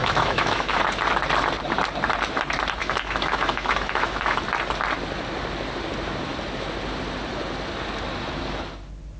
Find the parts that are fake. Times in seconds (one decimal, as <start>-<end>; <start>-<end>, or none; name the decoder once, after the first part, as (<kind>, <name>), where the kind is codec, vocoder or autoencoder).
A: 0.0-0.8 (autoencoder, DAC-VAE); 2.8-4.4